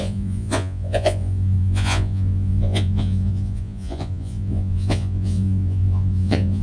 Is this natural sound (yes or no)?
no